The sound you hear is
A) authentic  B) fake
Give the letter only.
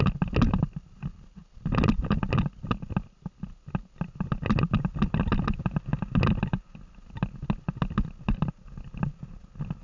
A